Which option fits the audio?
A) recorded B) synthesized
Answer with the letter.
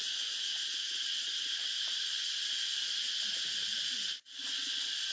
A